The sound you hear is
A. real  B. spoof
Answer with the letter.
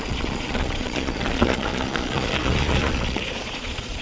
B